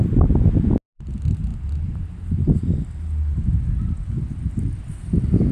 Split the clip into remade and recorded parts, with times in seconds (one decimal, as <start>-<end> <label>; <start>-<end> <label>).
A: 0.0-1.5 recorded; 1.5-4.8 remade; 4.8-5.5 recorded